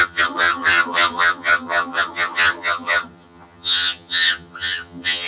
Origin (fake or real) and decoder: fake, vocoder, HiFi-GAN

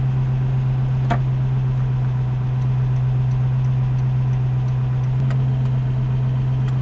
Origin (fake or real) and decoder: real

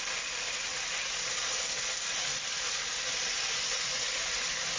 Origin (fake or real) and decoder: real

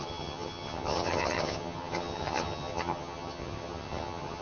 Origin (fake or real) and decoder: fake, vocoder, HiFi-GAN